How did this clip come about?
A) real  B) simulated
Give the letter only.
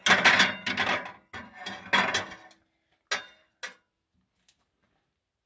A